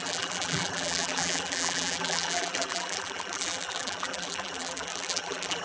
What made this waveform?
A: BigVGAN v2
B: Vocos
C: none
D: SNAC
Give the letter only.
A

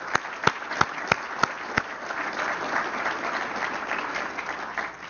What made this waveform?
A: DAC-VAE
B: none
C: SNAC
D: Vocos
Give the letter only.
B